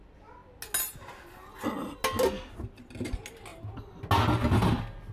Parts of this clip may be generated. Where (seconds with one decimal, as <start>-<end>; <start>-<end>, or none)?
none